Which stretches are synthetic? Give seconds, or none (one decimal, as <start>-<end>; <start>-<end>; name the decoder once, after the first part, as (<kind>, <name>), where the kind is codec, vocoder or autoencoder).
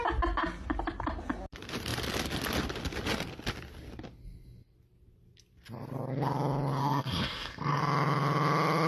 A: 6.8-7.8 (codec, SNAC)